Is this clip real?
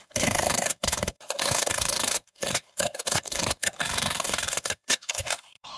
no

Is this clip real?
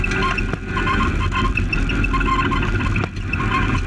yes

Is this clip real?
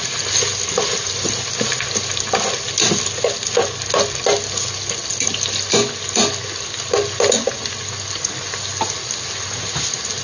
yes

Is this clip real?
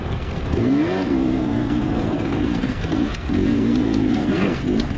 no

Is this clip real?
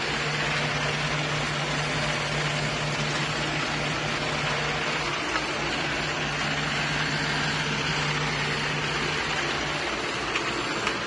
yes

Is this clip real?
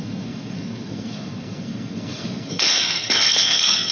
no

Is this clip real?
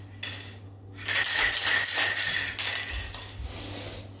yes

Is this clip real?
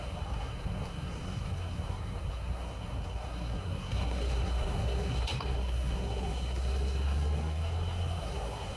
no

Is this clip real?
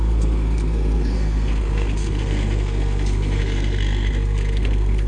no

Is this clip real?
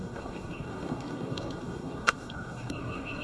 no